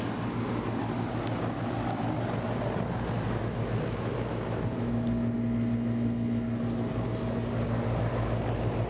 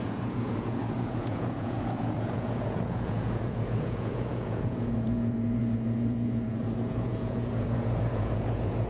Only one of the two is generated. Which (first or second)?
second